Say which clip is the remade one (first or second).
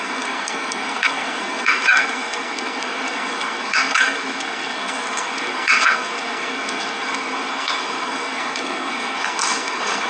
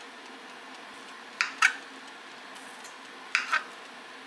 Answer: first